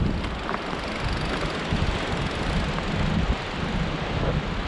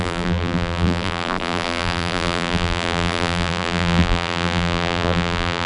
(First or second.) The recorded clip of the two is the first